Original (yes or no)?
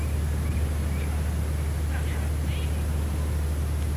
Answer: yes